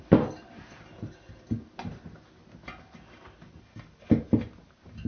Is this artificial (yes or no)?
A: no